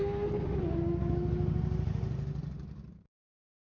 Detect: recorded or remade recorded